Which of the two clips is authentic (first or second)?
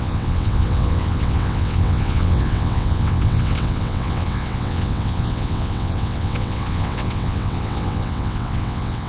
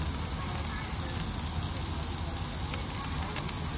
second